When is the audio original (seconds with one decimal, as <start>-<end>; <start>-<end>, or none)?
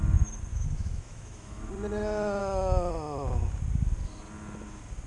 0.0-0.5; 1.7-2.4; 2.9-5.1